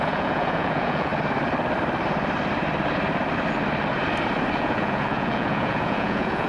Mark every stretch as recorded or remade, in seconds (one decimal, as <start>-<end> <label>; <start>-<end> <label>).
0.0-1.1 remade; 1.1-4.6 recorded; 4.6-6.5 remade